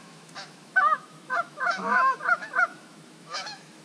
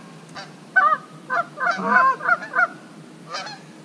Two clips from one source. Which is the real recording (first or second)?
second